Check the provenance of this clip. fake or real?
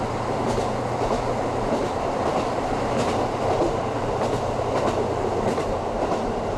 real